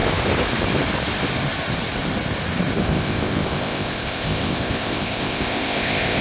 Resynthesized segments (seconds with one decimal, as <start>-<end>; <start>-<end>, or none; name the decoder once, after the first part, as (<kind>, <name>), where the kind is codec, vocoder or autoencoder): 2.8-6.2 (codec, ZipCodec)